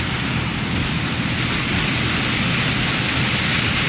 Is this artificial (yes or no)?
no